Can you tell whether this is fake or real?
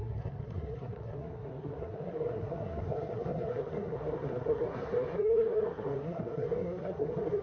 fake